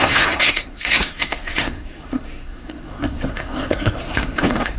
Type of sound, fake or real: fake